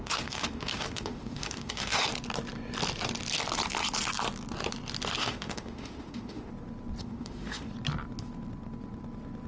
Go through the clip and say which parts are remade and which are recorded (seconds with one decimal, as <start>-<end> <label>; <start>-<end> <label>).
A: 0.0-2.0 remade; 2.0-5.2 recorded; 5.2-6.5 remade; 6.5-7.0 recorded; 7.0-7.7 remade; 7.7-9.5 recorded